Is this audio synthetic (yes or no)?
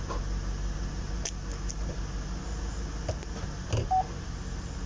no